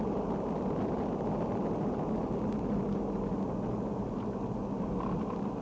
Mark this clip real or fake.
real